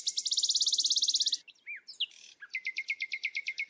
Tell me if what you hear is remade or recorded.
recorded